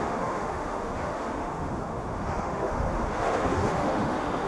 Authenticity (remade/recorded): remade